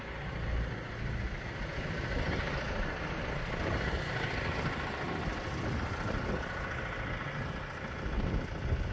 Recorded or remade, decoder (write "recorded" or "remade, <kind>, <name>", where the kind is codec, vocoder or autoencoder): recorded